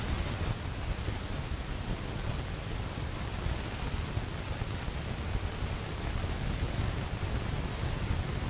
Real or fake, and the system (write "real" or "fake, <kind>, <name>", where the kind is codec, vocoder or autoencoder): real